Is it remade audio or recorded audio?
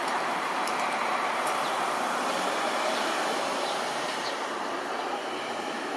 remade